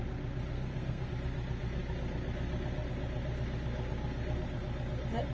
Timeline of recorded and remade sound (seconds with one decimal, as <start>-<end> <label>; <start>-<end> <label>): 0.0-0.5 recorded; 0.5-1.1 remade; 1.1-5.3 recorded

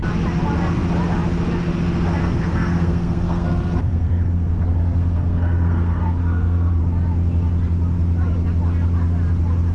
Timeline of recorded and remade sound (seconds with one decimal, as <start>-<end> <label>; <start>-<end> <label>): 0.0-2.2 recorded; 2.2-6.8 remade; 6.8-9.7 recorded

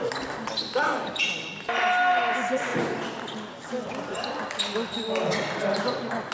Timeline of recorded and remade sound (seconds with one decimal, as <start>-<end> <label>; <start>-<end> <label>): 0.0-6.3 recorded

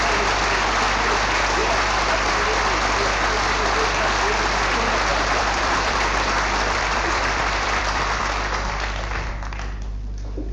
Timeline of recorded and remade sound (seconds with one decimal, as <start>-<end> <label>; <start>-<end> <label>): 0.0-5.1 recorded; 5.1-8.2 remade; 8.2-10.5 recorded

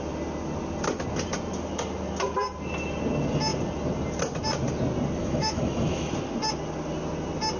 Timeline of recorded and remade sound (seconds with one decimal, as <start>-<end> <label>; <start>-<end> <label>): 0.0-5.2 recorded; 5.2-6.1 remade; 6.1-7.6 recorded

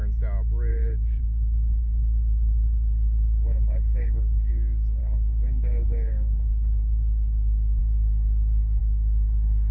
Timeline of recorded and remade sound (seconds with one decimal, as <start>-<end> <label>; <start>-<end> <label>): 0.0-0.7 recorded; 0.7-4.5 remade; 4.5-5.0 recorded; 5.0-7.8 remade; 7.8-8.8 recorded; 8.8-9.7 remade

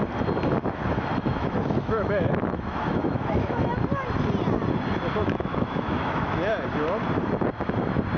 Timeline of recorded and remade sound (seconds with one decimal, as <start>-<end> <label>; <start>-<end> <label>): 0.0-1.1 recorded; 1.1-3.9 remade; 3.9-5.2 recorded; 5.2-6.5 remade; 6.5-8.2 recorded

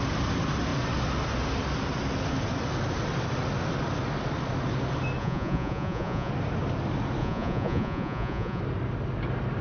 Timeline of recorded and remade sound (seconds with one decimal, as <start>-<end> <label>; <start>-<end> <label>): 0.0-5.2 recorded; 5.2-6.3 remade; 6.3-7.2 recorded; 7.2-8.6 remade; 8.6-9.6 recorded